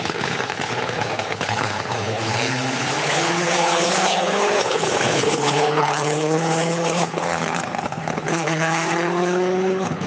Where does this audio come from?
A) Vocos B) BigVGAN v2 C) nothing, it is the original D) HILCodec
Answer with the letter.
D